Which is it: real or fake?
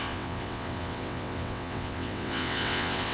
fake